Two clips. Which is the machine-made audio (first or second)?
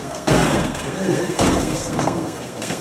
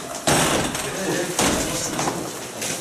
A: first